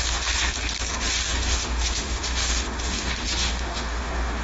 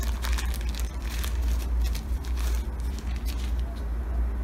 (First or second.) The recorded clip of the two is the second